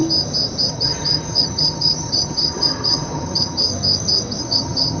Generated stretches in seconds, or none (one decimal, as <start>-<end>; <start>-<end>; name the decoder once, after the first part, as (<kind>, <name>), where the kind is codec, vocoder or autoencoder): 0.7-3.7 (vocoder, HiFi-GAN); 4.4-5.0